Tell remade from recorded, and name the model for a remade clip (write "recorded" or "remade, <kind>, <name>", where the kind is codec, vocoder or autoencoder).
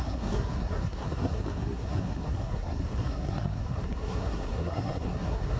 remade, codec, SNAC